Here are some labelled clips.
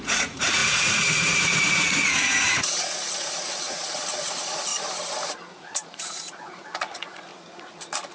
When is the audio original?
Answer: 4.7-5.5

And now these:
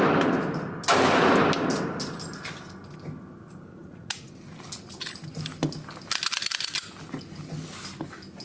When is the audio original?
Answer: 0.0-3.7; 4.3-8.4

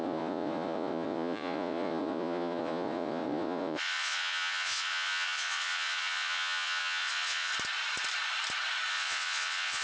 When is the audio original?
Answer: 7.5-8.9